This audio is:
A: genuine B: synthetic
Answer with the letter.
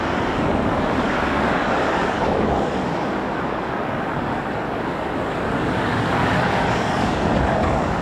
B